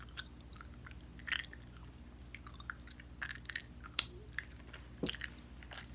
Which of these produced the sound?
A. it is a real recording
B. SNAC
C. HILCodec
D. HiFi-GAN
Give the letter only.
A